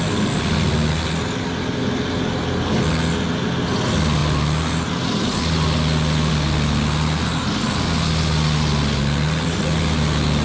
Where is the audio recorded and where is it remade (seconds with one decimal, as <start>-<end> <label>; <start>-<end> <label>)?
0.0-10.4 recorded

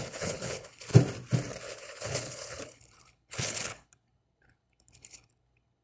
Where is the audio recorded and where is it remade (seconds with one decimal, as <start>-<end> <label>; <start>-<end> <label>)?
0.0-0.9 remade; 0.9-1.6 recorded; 1.6-5.8 remade